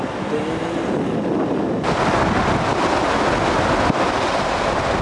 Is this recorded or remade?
recorded